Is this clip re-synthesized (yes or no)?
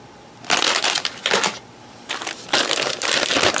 no